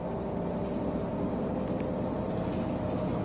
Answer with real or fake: real